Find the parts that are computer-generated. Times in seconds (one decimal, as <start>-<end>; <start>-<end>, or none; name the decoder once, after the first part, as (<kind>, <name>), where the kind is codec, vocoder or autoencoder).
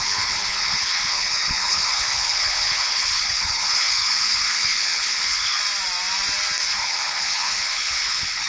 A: 0.0-5.6 (codec, HILCodec); 6.6-8.5